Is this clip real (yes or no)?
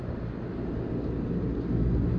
yes